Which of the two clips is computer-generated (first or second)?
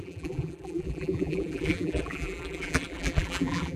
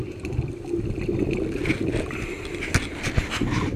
first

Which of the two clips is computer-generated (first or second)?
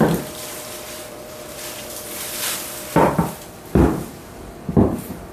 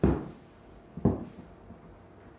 first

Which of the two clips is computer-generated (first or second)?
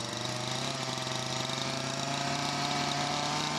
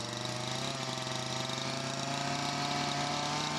first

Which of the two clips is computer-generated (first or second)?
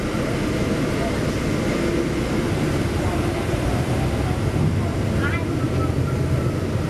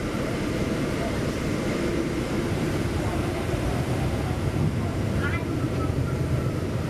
second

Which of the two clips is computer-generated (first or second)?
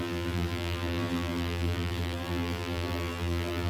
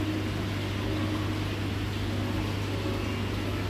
first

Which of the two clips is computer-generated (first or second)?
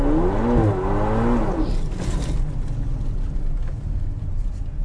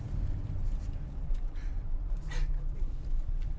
second